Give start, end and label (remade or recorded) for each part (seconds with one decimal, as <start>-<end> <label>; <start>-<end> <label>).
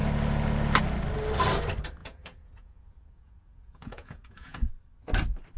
0.0-2.0 recorded; 2.0-4.7 remade; 4.7-5.6 recorded